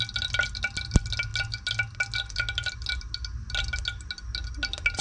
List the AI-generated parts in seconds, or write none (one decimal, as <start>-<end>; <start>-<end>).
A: none